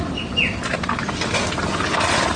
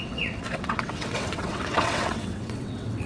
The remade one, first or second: second